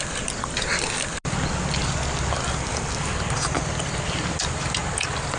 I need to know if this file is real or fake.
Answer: real